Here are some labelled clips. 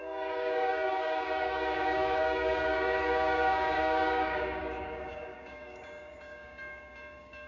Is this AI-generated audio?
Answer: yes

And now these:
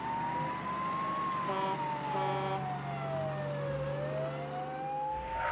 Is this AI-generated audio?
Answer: no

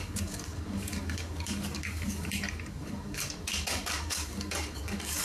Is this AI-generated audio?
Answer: yes